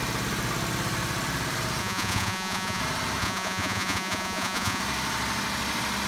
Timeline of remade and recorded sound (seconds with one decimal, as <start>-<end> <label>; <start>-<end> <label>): 0.0-1.8 recorded; 1.8-2.8 remade; 2.8-3.2 recorded; 3.2-4.8 remade; 4.8-6.1 recorded

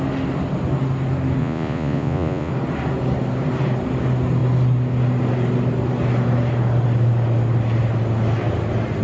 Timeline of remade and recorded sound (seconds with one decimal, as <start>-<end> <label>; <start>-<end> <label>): 0.0-1.4 recorded; 1.4-2.5 remade; 2.5-9.0 recorded

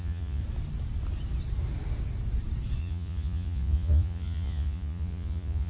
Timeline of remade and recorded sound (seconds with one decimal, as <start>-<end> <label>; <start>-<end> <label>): 0.0-0.4 remade; 0.4-2.8 recorded; 2.8-5.7 remade

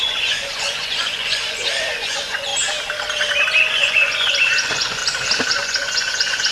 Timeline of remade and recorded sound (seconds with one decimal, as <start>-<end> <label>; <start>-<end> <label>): 0.0-2.5 remade; 2.5-3.7 recorded; 3.7-5.0 remade; 5.0-5.5 recorded; 5.5-6.5 remade

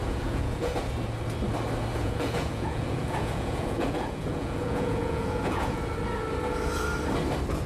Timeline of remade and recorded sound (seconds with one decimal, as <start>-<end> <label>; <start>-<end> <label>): 0.0-0.9 remade; 0.9-1.9 recorded; 1.9-5.8 remade; 5.8-7.7 recorded

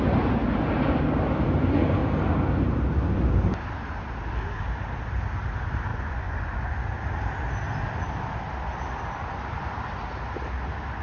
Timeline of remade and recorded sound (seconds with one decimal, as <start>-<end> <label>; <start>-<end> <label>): 0.0-5.9 recorded; 5.9-6.7 remade; 6.7-11.0 recorded